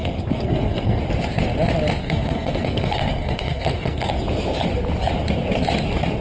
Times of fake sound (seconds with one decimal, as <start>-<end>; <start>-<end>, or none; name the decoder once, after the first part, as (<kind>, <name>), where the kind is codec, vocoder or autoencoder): 0.0-1.0 (codec, SNAC); 2.0-4.1